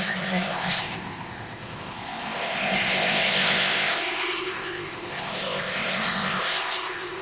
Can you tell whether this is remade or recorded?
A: remade